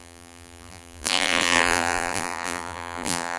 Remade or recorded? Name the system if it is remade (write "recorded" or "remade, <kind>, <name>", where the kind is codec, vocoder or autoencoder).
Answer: remade, vocoder, BigVGAN v2